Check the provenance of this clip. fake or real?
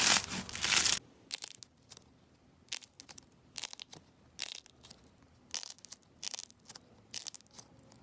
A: real